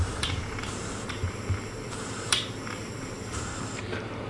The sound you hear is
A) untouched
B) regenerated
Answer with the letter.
B